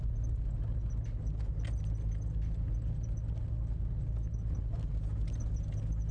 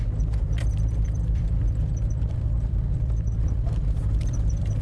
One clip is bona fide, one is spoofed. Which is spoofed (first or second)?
second